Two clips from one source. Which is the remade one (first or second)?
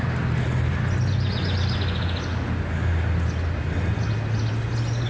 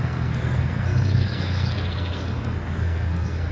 second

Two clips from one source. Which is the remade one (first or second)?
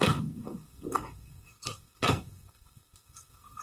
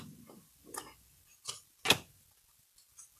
first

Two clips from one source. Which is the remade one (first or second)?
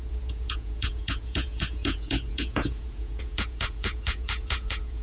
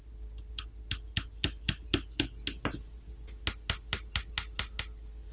first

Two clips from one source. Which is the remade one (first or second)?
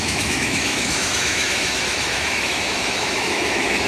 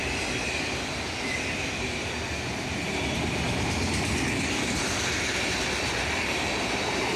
first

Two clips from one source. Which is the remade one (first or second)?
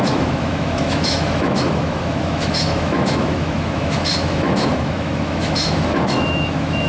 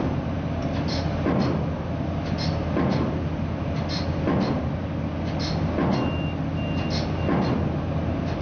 first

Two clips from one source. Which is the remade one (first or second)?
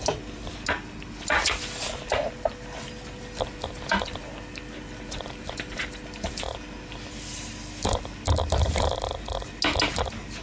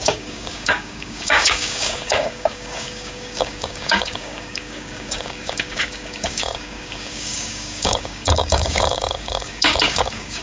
second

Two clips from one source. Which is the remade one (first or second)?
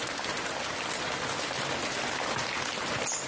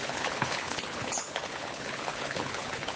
second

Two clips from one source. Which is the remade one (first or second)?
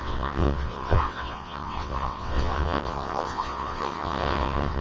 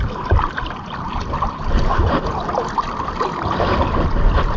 first